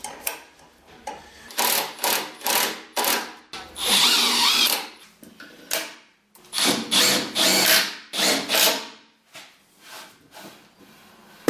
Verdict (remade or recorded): recorded